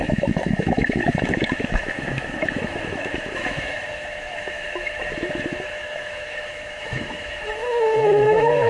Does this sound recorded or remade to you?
remade